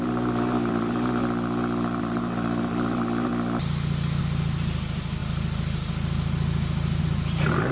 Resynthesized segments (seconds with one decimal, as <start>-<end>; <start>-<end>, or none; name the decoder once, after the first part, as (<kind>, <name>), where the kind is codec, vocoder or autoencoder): 0.0-1.2 (vocoder, BigVGAN v2); 2.0-3.3; 4.2-5.2; 7.0-7.7